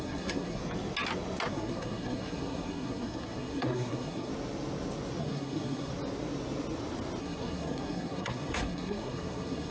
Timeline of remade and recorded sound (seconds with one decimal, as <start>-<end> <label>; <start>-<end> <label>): 0.0-0.6 remade; 0.6-1.5 recorded; 1.5-4.3 remade; 4.3-5.2 recorded; 5.2-5.9 remade; 5.9-7.2 recorded; 7.2-9.7 remade